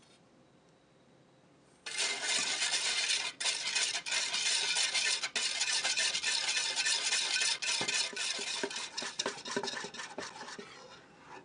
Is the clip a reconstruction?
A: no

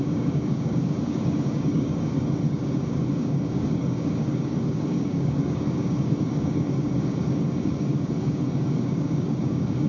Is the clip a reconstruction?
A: yes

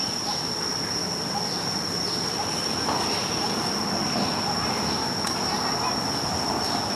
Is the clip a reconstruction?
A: no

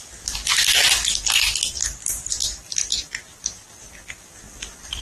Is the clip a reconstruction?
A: yes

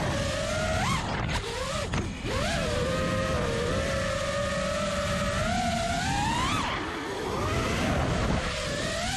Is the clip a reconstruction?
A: no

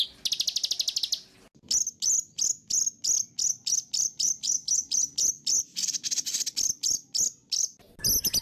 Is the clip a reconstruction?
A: no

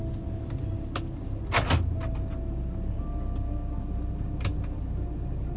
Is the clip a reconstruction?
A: no